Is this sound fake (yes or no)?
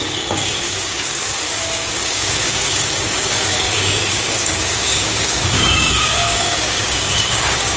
yes